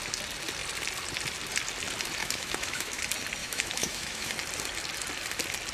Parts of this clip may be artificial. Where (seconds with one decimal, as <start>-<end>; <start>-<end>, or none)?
2.2-3.0; 3.4-4.3